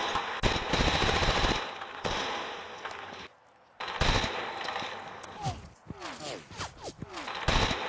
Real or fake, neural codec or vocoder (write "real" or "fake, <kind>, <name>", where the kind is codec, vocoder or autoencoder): real